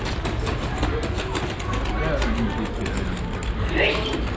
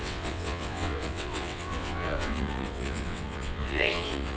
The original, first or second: first